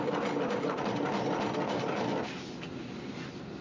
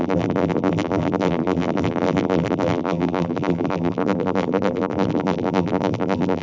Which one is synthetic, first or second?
second